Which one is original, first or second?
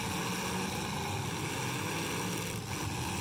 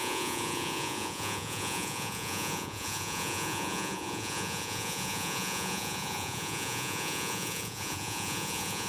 first